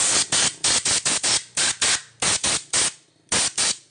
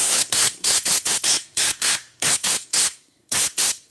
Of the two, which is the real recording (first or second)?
first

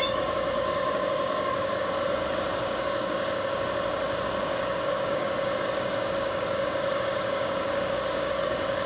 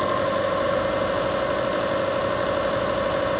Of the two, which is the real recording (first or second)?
second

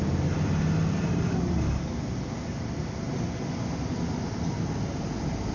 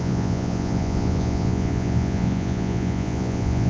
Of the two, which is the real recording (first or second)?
first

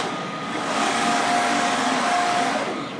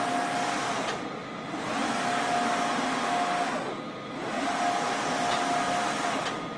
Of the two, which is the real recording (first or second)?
second